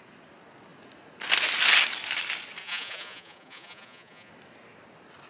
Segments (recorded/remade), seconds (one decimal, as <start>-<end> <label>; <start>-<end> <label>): 0.0-2.6 recorded; 2.6-4.3 remade; 4.3-5.3 recorded